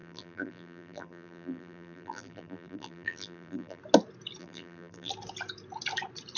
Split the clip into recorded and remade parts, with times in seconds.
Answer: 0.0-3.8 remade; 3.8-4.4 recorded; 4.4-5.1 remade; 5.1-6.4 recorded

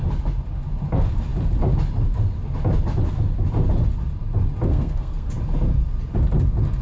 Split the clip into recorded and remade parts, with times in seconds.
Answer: 0.0-4.7 recorded; 4.7-5.3 remade; 5.3-6.8 recorded

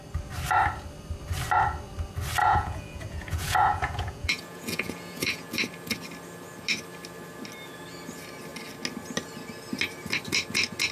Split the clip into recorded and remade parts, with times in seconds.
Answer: 0.0-2.4 recorded; 2.4-5.5 remade; 5.5-10.9 recorded

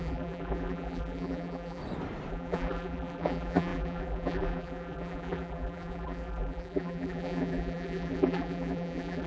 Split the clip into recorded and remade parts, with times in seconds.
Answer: 0.0-1.8 remade; 1.8-2.3 recorded; 2.3-9.3 remade

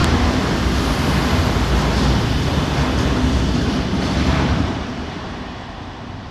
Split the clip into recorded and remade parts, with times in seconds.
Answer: 0.0-3.5 recorded; 3.5-6.3 remade

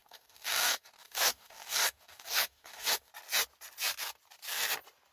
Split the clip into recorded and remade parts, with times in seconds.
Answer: 0.0-3.1 remade; 3.1-5.1 recorded